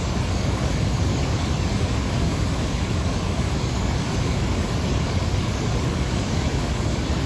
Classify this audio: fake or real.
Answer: fake